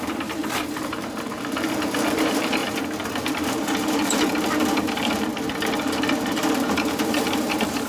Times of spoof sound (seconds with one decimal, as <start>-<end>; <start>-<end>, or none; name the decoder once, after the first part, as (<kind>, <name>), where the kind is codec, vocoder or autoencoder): 0.0-2.6 (vocoder, BigVGAN v2); 3.5-5.3; 5.8-7.9